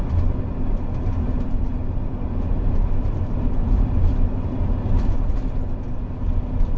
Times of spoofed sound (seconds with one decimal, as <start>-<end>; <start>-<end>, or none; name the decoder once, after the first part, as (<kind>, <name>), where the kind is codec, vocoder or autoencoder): 0.5-4.6 (vocoder, BigVGAN v2)